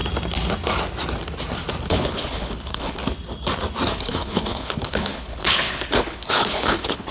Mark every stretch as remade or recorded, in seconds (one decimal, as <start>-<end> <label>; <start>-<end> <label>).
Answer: 0.0-1.9 recorded; 1.9-3.0 remade; 3.0-4.0 recorded; 4.0-7.1 remade